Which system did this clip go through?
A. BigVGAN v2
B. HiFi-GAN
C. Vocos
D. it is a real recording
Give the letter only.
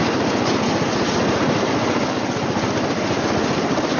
D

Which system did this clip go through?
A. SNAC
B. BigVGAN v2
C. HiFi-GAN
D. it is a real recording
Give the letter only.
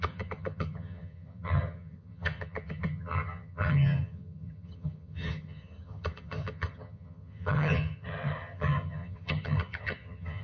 C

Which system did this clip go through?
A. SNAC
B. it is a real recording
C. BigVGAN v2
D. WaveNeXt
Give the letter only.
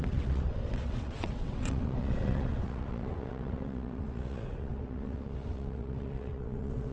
D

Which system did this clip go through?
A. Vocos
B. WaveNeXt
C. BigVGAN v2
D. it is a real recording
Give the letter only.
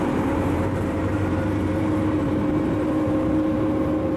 C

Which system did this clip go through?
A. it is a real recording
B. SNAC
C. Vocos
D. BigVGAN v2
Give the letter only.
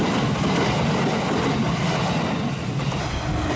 A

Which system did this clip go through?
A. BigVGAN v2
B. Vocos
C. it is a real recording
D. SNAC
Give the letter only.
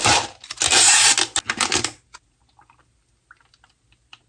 C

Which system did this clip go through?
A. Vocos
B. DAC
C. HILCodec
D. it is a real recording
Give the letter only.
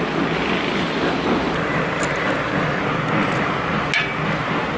D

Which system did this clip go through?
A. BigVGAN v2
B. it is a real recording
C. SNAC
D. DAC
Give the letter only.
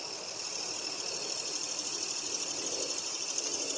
B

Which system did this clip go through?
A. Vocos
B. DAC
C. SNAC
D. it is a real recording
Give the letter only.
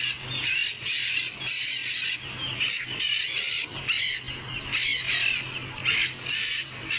D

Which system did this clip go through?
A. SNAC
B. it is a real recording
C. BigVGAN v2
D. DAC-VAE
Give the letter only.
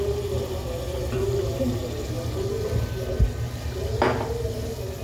B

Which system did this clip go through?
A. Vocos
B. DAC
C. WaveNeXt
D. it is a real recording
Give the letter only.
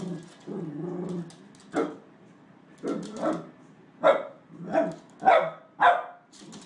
D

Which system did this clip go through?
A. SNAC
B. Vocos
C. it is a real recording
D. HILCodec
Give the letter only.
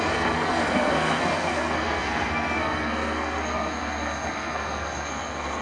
A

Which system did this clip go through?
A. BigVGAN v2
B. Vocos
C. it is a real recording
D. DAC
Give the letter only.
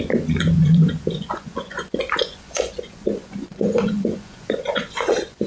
B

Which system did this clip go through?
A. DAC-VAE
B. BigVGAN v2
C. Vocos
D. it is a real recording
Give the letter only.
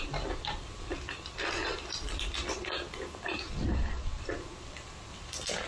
B